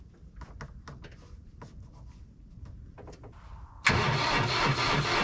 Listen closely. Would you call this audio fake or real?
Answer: real